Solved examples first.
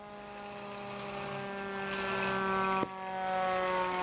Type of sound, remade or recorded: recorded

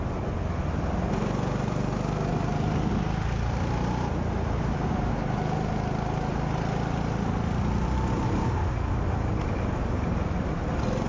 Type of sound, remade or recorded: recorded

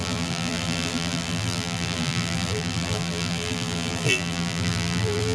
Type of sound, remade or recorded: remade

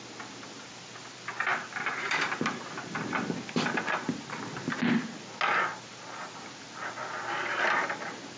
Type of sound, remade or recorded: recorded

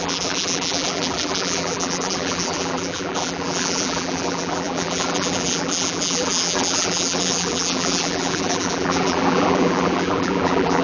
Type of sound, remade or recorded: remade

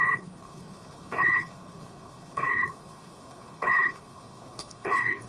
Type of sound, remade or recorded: remade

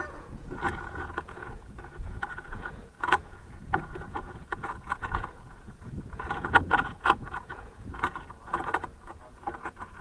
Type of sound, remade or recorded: remade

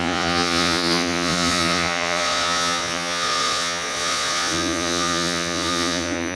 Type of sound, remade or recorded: remade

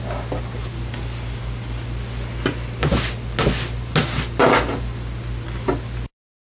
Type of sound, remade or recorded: recorded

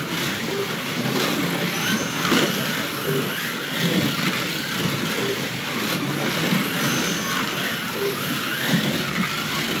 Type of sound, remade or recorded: recorded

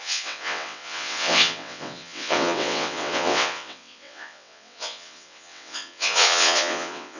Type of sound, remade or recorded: remade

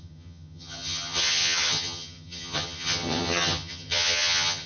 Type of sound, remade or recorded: remade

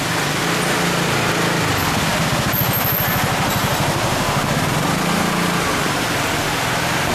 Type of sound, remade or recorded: recorded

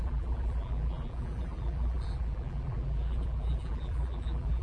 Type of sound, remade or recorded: remade